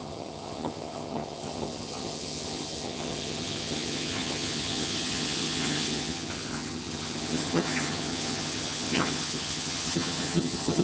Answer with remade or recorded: remade